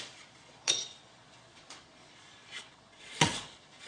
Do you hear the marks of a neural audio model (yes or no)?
yes